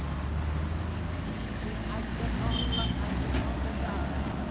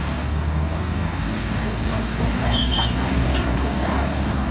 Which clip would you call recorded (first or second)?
first